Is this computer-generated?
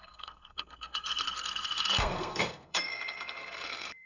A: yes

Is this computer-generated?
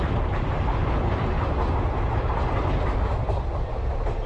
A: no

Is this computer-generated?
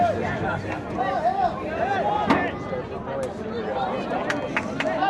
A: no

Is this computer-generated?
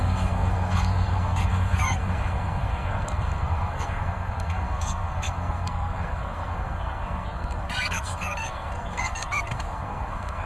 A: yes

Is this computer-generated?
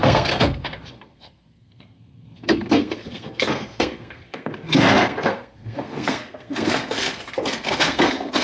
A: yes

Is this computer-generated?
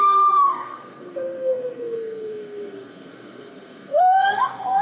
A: yes